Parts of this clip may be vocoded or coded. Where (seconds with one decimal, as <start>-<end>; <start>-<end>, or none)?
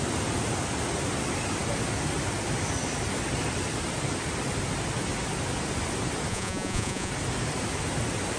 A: 6.3-7.1